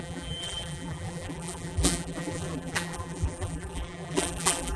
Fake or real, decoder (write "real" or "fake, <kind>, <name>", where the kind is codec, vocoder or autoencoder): fake, vocoder, BigVGAN v2